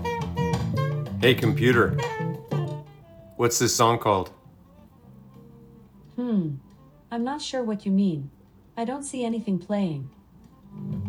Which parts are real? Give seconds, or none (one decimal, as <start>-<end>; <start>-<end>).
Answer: 0.6-2.0; 2.7-3.8; 5.0-8.7